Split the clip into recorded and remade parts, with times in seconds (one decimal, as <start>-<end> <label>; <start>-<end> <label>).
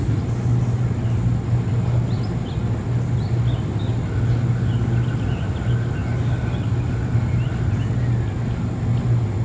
0.0-9.4 recorded